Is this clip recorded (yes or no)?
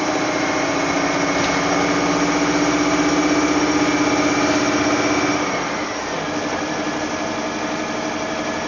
yes